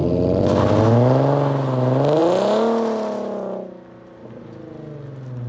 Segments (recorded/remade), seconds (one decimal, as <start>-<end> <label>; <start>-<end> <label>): 0.0-5.5 recorded